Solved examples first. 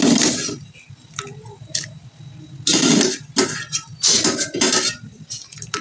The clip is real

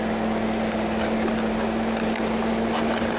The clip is real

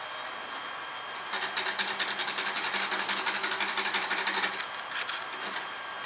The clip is real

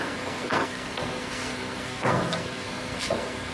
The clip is fake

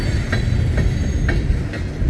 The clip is real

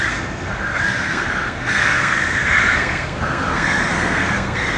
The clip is fake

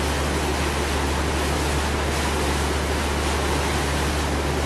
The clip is real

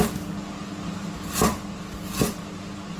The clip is real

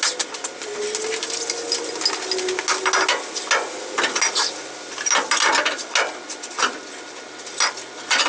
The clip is real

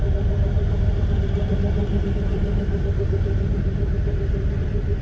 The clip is fake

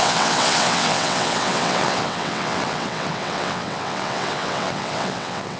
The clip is fake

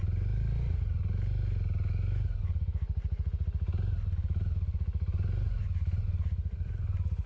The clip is real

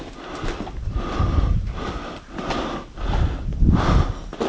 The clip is real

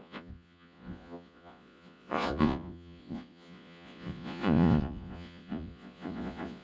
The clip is fake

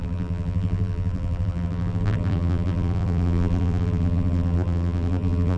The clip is fake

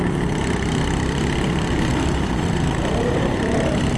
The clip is fake